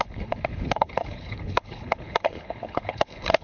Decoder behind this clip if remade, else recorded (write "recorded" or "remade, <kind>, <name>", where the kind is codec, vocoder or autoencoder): remade, codec, HILCodec